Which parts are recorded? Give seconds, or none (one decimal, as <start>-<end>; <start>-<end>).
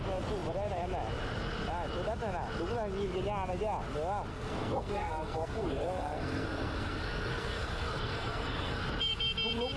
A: 0.0-4.3; 8.8-9.8